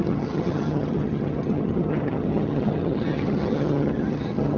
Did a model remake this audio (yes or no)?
yes